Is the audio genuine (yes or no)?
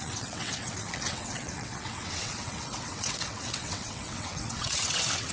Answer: no